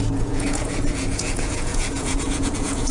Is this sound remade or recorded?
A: remade